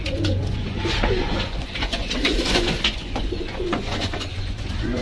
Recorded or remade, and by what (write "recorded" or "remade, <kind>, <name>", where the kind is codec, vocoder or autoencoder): remade, vocoder, Vocos